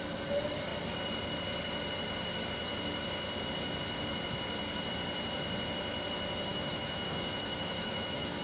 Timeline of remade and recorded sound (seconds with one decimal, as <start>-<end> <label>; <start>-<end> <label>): 0.0-6.5 recorded; 6.5-8.4 remade